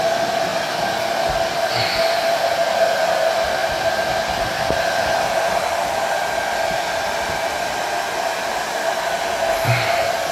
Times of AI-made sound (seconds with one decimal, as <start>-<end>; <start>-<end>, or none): none